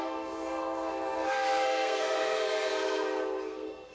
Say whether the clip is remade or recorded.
remade